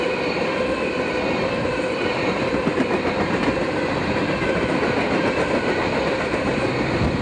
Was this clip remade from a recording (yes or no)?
yes